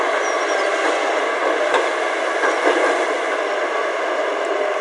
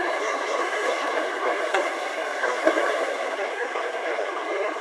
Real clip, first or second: first